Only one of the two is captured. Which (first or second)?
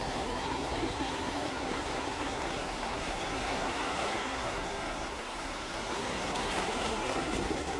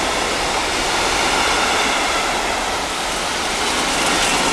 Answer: second